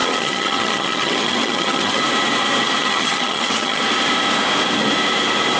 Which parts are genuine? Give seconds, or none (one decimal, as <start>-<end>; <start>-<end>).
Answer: 2.0-2.8; 3.8-5.6